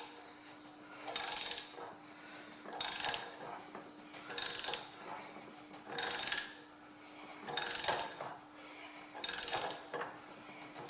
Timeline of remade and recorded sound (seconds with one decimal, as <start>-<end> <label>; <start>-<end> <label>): 0.0-10.9 recorded